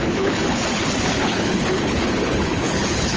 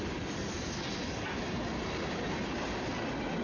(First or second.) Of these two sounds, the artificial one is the first